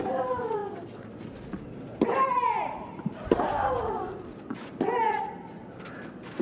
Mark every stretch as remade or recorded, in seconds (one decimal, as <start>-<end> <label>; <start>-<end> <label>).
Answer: 0.0-6.4 recorded